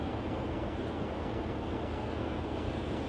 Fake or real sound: fake